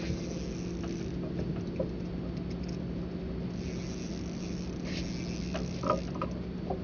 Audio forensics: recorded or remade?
recorded